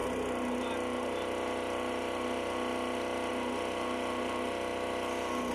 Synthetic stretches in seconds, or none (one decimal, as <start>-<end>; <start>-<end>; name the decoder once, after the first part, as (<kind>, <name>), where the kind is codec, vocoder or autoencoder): none